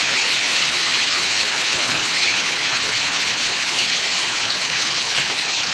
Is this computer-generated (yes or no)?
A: yes